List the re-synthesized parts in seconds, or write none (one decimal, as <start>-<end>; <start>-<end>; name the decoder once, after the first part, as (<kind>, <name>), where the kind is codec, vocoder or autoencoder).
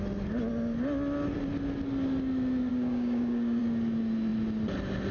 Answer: 2.7-3.6 (codec, DAC)